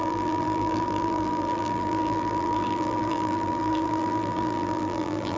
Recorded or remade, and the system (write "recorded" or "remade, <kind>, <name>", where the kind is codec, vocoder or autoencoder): remade, vocoder, BigVGAN v2